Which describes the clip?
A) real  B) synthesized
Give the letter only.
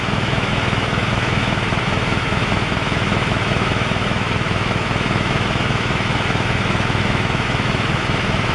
B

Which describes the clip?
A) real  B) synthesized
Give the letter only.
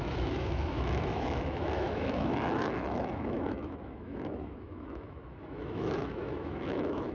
B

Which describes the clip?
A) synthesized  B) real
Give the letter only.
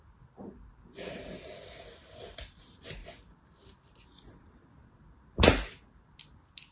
B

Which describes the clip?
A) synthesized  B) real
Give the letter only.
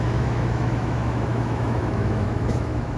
A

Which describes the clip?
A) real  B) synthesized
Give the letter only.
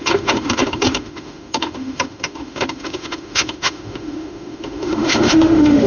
B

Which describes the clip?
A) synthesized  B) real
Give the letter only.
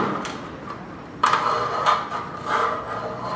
B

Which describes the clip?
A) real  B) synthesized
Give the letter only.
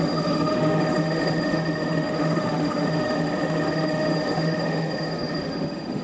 B